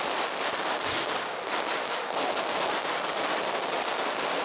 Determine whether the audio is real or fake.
fake